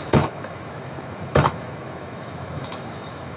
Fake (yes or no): yes